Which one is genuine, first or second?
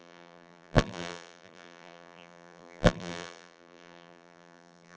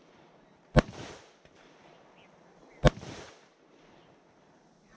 second